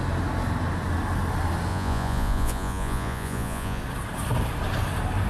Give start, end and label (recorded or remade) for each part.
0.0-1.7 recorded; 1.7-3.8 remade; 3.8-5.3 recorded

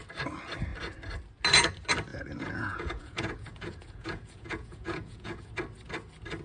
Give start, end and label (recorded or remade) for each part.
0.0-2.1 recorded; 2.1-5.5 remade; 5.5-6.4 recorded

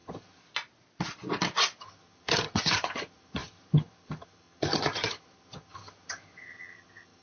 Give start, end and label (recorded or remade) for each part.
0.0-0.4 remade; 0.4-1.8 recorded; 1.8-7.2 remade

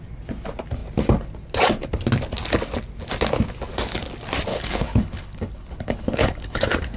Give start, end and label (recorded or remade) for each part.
0.0-4.5 recorded; 4.5-6.6 remade; 6.6-7.0 recorded